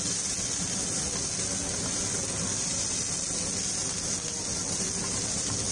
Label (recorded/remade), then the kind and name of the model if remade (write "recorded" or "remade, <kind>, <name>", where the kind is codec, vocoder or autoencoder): recorded